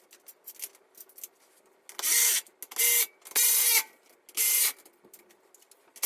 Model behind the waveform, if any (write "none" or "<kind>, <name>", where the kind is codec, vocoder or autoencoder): none